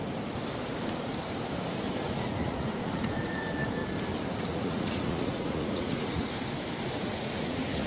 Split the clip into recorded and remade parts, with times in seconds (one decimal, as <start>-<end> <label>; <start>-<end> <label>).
0.0-2.0 recorded; 2.0-3.8 remade; 3.8-4.5 recorded; 4.5-6.2 remade; 6.2-6.8 recorded; 6.8-7.9 remade